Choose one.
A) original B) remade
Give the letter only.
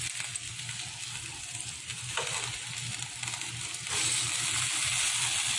A